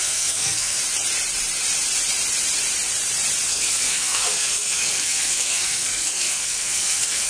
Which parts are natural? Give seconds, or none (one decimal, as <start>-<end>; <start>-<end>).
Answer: 0.8-3.5